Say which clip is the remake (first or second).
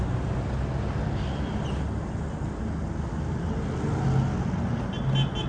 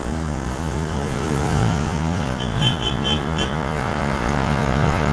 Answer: second